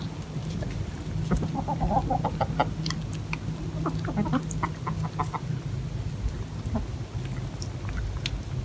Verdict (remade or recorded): recorded